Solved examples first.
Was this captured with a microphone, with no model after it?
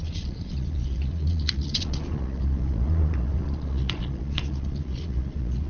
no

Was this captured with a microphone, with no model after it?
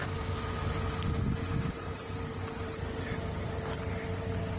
yes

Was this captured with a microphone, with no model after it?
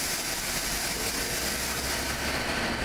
yes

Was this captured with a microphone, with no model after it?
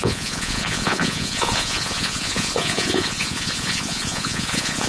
no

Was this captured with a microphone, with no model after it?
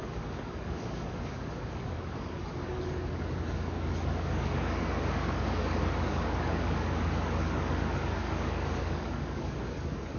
no